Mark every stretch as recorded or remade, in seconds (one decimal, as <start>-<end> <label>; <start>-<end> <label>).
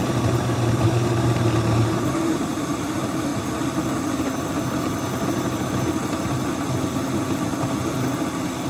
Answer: 0.0-3.3 remade; 3.3-8.7 recorded